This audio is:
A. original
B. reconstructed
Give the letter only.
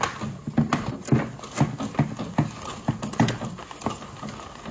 A